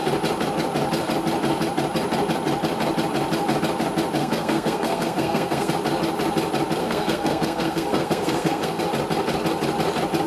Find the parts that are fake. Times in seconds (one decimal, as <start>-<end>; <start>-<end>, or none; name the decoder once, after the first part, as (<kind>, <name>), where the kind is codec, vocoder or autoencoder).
4.2-5.7 (codec, SNAC); 6.8-8.8